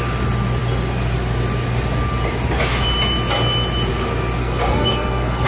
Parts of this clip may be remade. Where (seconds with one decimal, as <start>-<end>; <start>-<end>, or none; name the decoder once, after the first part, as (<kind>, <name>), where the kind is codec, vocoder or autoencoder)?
4.4-5.5 (codec, SNAC)